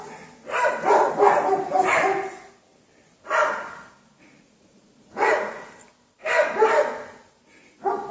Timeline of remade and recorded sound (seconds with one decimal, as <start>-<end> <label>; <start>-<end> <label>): 0.0-4.4 recorded; 4.4-5.7 remade; 5.7-8.1 recorded